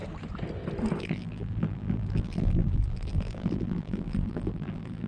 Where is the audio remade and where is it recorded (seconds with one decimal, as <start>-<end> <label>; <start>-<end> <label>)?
0.0-1.0 recorded; 1.0-5.1 remade